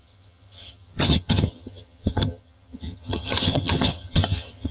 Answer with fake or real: fake